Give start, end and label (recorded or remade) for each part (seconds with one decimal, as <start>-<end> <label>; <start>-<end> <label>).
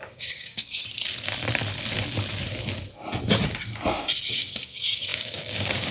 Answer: 0.0-0.8 remade; 0.8-4.3 recorded; 4.3-5.9 remade